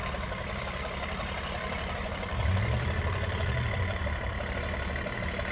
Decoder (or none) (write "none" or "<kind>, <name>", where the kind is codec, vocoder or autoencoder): vocoder, BigVGAN v2